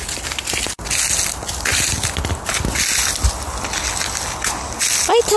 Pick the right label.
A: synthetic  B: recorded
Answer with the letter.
B